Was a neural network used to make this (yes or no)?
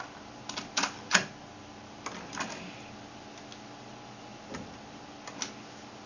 no